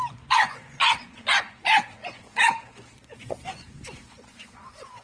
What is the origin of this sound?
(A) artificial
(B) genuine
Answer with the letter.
A